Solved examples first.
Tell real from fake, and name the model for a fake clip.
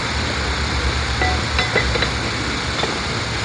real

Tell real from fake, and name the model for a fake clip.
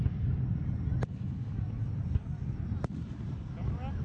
real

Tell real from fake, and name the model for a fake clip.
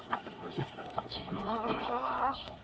fake, codec, SNAC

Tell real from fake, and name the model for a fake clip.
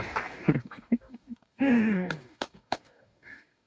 fake, codec, DAC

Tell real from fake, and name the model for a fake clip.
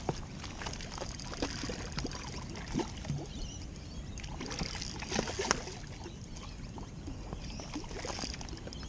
real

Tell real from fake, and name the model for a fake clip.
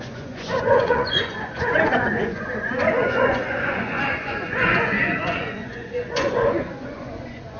fake, vocoder, Vocos